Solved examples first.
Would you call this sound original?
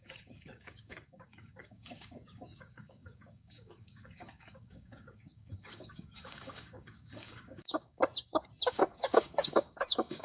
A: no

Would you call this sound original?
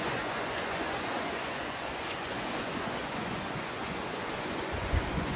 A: no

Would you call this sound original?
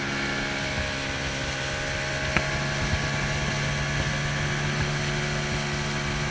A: yes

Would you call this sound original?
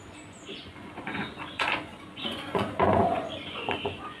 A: no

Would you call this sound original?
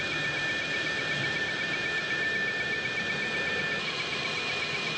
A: yes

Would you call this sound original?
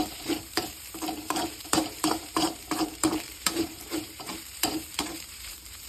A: no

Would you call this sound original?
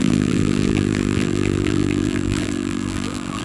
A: no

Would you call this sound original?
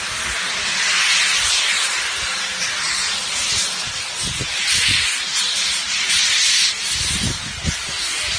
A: yes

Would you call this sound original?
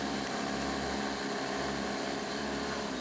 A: yes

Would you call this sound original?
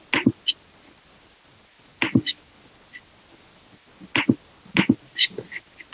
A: yes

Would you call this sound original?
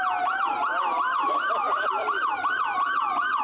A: yes